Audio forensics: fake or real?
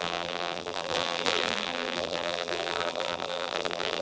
fake